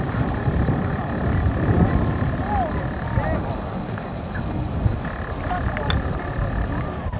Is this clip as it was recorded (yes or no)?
yes